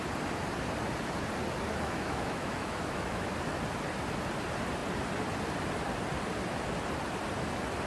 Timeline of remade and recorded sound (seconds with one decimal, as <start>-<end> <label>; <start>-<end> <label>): 0.0-1.7 recorded; 1.7-3.3 remade; 3.3-7.9 recorded